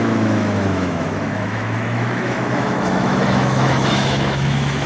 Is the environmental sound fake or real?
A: fake